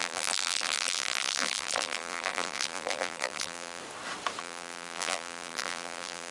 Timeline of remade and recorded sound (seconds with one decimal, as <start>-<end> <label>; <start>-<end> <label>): 0.0-3.8 remade; 3.8-4.4 recorded; 4.4-6.3 remade